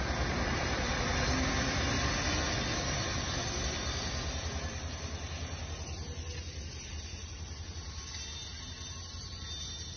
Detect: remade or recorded recorded